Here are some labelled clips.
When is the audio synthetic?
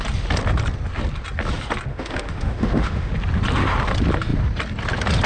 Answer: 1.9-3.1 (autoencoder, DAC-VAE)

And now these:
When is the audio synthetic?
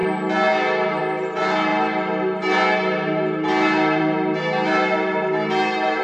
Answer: none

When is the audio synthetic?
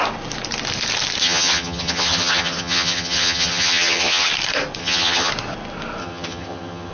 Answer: 1.2-4.3 (vocoder, HiFi-GAN); 4.8-5.3; 6.0-6.9